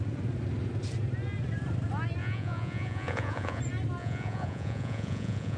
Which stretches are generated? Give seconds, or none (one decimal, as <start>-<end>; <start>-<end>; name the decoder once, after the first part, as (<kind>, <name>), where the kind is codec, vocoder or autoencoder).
2.2-3.6 (vocoder, Vocos); 4.0-5.6